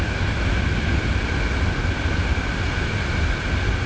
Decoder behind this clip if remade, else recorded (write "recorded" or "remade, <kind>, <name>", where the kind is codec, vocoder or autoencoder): recorded